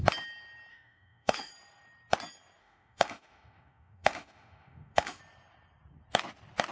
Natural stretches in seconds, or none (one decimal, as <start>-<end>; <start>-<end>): 0.0-0.7; 1.5-2.6; 5.2-6.7